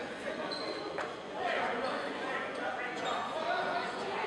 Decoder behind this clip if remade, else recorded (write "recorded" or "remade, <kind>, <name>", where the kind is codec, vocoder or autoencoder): remade, vocoder, Vocos